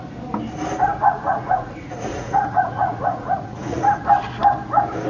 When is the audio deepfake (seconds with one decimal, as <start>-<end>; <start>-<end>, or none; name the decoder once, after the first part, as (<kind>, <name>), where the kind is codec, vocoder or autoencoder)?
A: 0.9-4.0 (vocoder, Vocos)